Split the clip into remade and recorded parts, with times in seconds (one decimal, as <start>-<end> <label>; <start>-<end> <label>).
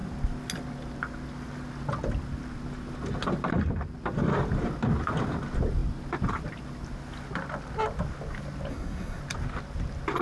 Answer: 0.0-8.7 recorded; 8.7-9.2 remade; 9.2-10.2 recorded